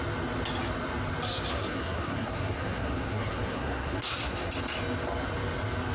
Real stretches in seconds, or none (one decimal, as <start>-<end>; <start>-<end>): 0.0-1.5; 4.5-5.9